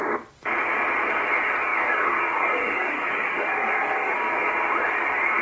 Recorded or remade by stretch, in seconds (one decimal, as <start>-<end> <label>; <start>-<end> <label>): 0.0-1.7 recorded; 1.7-4.5 remade; 4.5-5.4 recorded